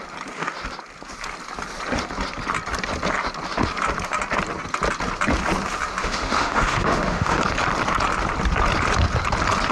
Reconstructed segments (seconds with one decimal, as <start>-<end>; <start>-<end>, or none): 6.0-7.4